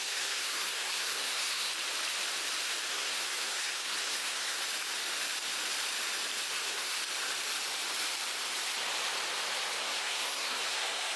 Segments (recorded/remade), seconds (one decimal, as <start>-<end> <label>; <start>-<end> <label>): 0.0-1.7 remade; 1.7-2.9 recorded; 2.9-4.6 remade; 4.6-6.5 recorded; 6.5-7.0 remade; 7.0-9.8 recorded; 9.8-11.2 remade